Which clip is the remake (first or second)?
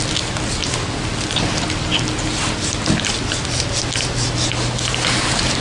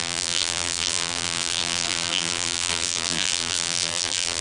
second